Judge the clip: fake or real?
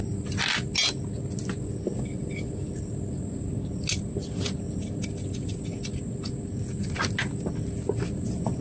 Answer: real